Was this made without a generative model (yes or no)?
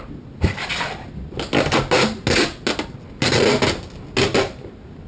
yes